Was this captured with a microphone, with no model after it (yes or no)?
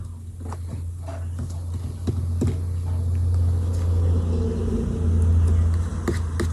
yes